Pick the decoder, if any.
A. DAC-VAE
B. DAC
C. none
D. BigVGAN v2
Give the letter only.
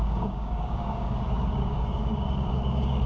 B